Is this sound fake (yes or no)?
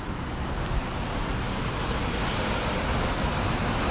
no